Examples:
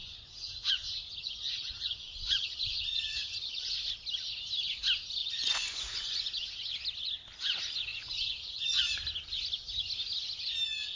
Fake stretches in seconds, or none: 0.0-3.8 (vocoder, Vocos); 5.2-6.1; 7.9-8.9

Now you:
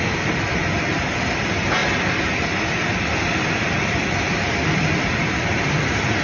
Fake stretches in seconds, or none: 0.0-1.8 (vocoder, BigVGAN v2); 2.6-6.2

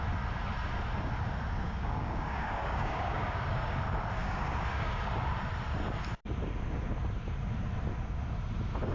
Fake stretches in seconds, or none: 1.6-3.8 (codec, DAC); 4.2-5.1